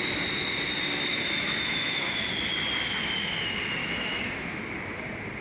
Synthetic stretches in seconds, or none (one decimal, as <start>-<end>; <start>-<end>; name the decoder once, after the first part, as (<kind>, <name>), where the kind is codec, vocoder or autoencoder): 1.1-2.2 (autoencoder, DAC-VAE); 3.8-4.6